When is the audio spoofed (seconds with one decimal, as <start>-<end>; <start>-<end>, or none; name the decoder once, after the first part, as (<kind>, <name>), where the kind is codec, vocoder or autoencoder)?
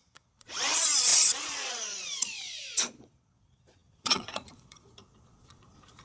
0.0-6.0 (vocoder, Vocos)